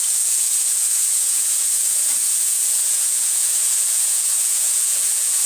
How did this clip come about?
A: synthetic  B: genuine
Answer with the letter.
A